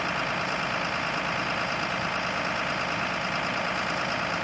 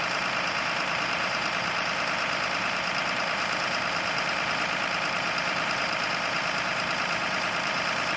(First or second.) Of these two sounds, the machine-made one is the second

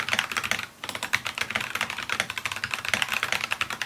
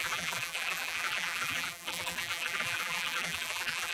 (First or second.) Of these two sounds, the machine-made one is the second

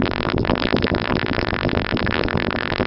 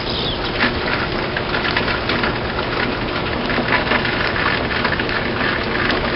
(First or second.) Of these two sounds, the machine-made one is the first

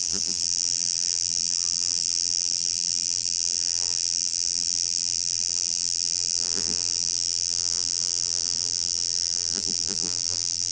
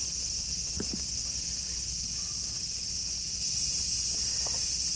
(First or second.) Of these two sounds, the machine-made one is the first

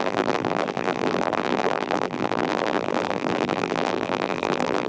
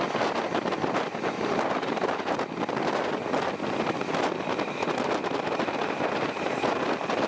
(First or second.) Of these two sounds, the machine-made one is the first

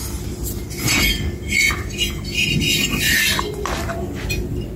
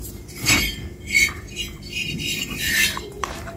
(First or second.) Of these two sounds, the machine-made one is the second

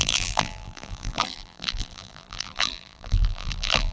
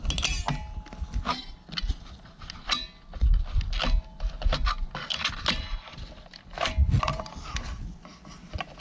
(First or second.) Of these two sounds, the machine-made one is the first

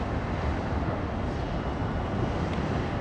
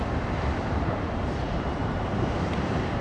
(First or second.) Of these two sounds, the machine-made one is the second